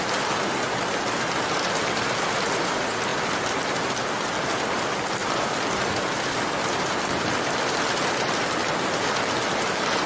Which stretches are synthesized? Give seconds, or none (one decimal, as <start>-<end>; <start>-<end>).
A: none